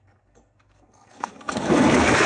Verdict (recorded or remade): remade